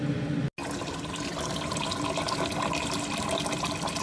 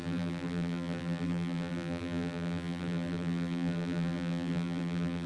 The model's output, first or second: second